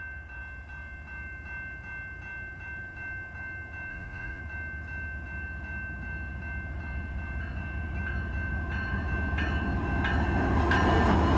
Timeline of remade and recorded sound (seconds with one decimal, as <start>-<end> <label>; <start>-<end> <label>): 0.0-3.9 recorded; 3.9-4.4 remade; 4.4-11.4 recorded